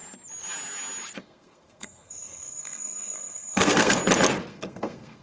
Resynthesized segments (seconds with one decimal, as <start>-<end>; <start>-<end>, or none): 1.2-4.0; 4.5-5.2